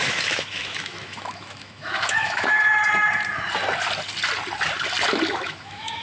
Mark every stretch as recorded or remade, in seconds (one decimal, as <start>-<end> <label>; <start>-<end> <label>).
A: 0.0-2.7 remade; 2.7-5.3 recorded; 5.3-6.0 remade